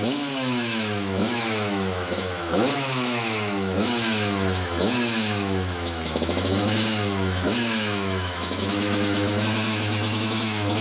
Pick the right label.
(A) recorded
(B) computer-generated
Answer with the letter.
B